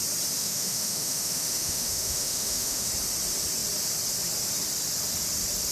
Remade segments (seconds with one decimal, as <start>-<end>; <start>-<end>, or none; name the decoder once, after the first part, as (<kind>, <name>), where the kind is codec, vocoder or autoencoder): 0.4-2.9 (autoencoder, DAC-VAE)